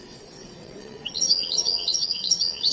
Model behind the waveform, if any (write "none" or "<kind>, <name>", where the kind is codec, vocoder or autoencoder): vocoder, WaveNeXt